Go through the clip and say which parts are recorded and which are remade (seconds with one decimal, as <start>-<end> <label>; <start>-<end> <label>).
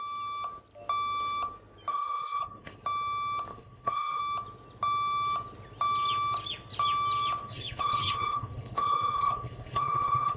0.0-1.9 recorded; 1.9-2.8 remade; 2.8-3.5 recorded; 3.5-4.2 remade; 4.2-7.4 recorded; 7.4-10.4 remade